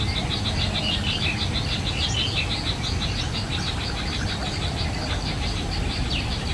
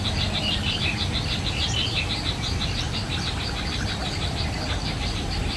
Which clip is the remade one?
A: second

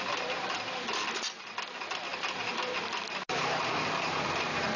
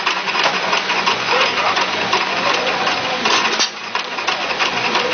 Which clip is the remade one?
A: second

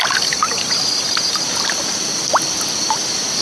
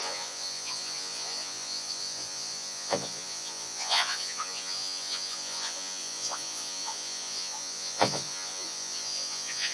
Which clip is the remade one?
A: second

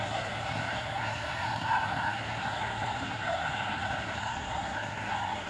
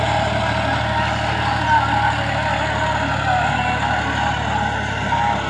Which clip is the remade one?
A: first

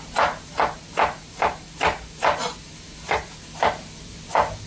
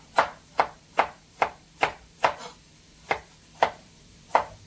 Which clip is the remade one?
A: second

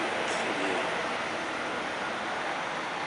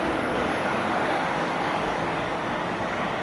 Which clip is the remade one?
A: second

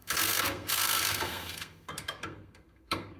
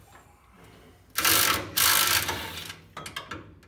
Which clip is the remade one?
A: first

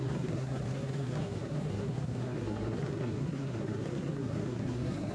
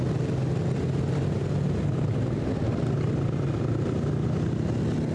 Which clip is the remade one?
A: first